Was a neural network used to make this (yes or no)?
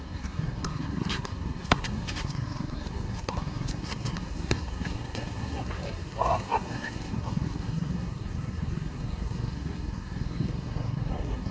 yes